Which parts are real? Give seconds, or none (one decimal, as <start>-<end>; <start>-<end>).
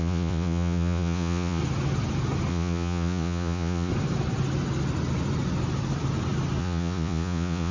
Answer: 1.6-2.5; 3.9-6.6